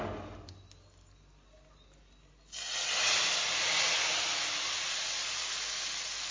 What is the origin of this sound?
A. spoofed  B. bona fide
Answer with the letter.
B